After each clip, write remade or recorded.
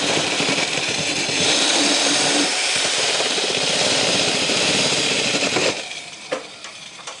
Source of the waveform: remade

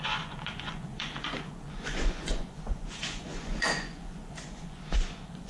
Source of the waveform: remade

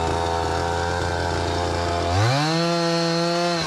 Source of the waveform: recorded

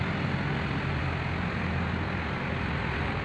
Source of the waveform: recorded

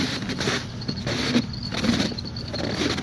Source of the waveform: recorded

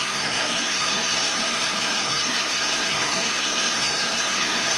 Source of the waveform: remade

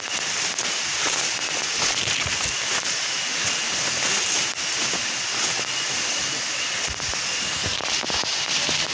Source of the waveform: recorded